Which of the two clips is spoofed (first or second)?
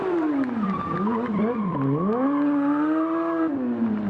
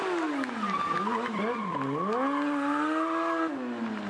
first